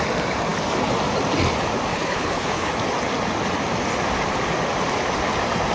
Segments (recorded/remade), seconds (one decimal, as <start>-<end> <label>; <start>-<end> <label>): 0.0-1.9 recorded; 1.9-2.7 remade; 2.7-5.7 recorded